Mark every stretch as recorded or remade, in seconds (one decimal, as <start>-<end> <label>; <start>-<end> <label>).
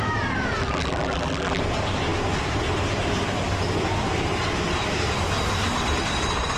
0.0-0.6 recorded; 0.6-1.6 remade; 1.6-6.6 recorded